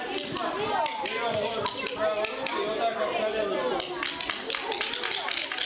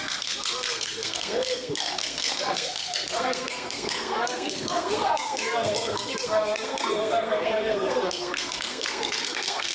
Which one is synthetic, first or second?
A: second